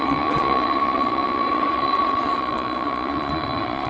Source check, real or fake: fake